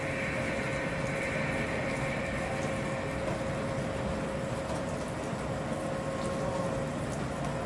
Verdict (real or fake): real